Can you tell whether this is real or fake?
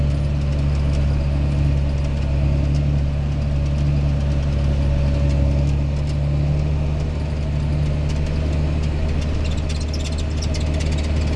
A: real